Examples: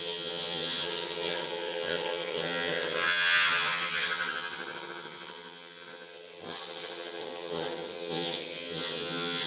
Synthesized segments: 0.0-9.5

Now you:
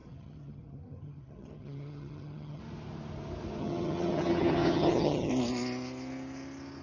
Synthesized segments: 0.0-2.6; 3.6-5.3